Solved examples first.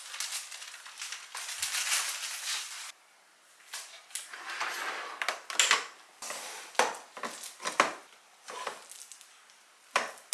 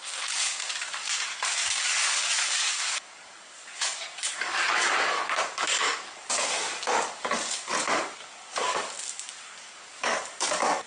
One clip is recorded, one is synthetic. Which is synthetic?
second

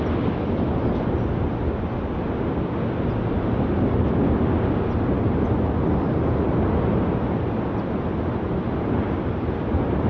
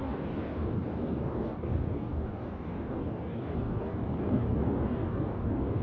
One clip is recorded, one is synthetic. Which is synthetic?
second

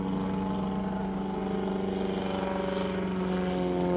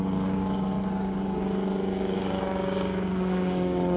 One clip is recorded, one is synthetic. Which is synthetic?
second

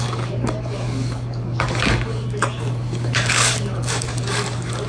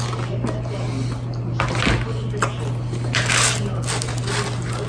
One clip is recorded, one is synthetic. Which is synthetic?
first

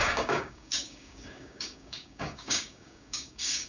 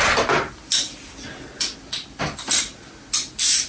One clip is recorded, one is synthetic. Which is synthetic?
first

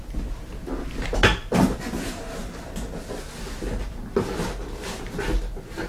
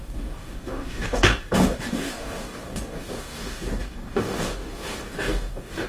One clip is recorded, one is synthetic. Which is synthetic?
second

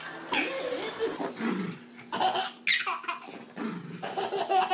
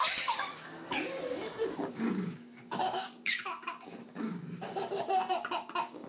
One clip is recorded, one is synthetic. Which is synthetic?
second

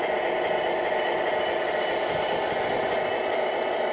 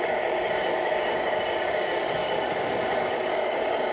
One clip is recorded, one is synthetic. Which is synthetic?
second